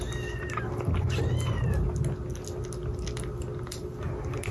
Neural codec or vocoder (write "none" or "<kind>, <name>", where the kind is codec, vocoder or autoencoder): none